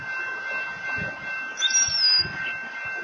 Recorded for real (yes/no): yes